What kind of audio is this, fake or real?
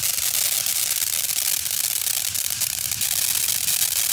real